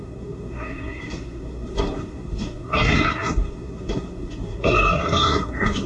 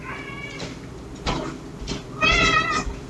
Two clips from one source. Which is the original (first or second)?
second